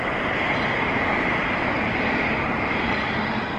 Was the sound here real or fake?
fake